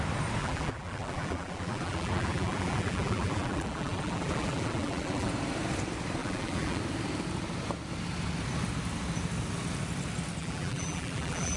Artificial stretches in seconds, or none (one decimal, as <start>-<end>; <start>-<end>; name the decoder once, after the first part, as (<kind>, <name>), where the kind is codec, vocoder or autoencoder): 0.4-5.3 (vocoder, BigVGAN v2); 6.2-6.8; 10.4-11.6